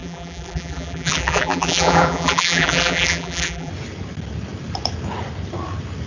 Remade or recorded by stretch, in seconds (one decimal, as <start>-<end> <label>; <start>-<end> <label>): 0.0-3.7 remade; 3.7-6.1 recorded